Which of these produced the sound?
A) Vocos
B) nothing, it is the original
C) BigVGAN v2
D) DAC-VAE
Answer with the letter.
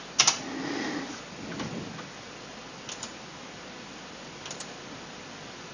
B